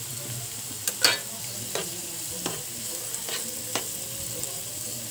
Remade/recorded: recorded